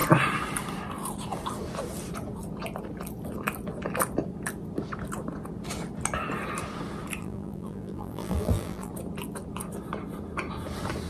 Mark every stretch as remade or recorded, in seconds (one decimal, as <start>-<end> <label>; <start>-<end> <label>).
0.0-7.2 recorded; 7.2-8.9 remade; 8.9-11.1 recorded